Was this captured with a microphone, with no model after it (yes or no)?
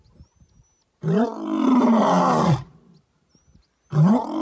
yes